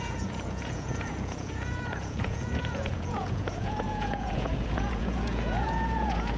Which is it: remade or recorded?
remade